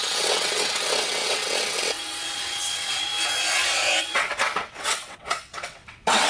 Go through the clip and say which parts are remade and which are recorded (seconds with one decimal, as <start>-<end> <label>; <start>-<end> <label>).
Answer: 0.0-3.1 remade; 3.1-4.0 recorded; 4.0-6.3 remade